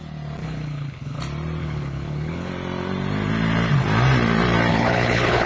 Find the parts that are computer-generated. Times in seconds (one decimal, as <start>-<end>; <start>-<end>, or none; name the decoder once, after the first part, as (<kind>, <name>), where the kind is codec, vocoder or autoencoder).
0.4-1.2 (codec, HILCodec); 1.6-2.5; 4.7-5.5